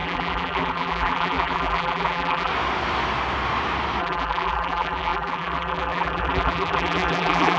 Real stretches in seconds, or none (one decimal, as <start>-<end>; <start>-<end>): 2.5-4.0